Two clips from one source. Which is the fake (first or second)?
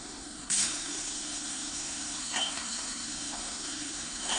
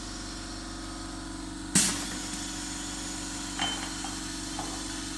first